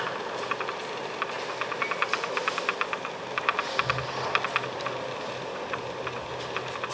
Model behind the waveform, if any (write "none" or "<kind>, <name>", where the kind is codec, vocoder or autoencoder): none